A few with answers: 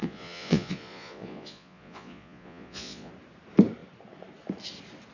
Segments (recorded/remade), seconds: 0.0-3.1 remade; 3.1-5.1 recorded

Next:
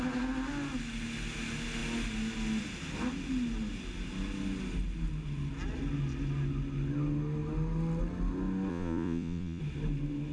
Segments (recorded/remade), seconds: 0.0-8.7 recorded; 8.7-9.6 remade; 9.6-10.3 recorded

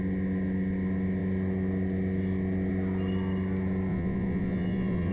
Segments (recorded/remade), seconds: 0.0-3.9 recorded; 3.9-5.1 remade